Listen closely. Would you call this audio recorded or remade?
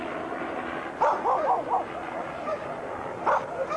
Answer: recorded